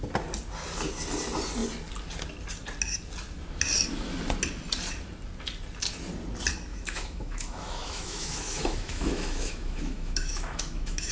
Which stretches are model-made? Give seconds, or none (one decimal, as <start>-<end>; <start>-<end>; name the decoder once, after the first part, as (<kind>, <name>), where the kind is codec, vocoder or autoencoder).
6.7-11.1 (autoencoder, DAC-VAE)